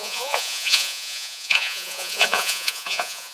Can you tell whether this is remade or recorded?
remade